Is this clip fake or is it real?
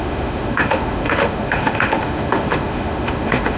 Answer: fake